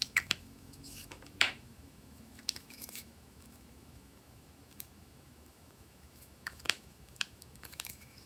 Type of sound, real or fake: fake